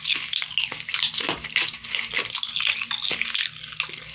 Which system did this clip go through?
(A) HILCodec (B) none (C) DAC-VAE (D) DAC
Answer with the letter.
B